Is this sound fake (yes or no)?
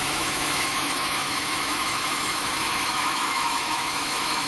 yes